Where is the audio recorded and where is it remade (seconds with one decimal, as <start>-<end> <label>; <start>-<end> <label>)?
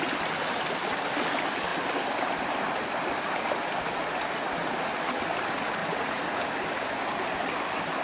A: 0.0-5.8 recorded; 5.8-6.4 remade; 6.4-8.0 recorded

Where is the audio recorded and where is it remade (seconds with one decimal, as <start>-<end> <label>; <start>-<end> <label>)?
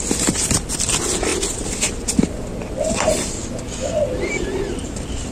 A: 0.0-5.3 recorded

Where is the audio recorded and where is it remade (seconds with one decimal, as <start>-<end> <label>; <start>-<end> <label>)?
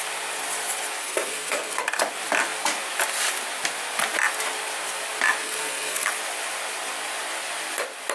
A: 0.0-1.0 recorded; 1.0-1.8 remade; 1.8-5.4 recorded; 5.4-6.1 remade; 6.1-8.1 recorded